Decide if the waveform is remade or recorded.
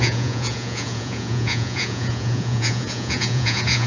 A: remade